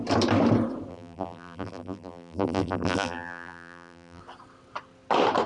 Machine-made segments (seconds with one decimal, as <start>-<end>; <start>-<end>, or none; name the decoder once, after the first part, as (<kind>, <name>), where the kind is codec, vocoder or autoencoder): 0.9-4.2 (vocoder, BigVGAN v2)